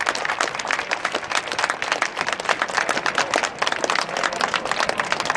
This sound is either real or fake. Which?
real